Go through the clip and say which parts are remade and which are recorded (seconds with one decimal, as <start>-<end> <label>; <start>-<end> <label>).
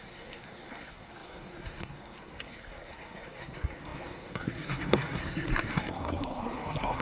0.0-7.0 remade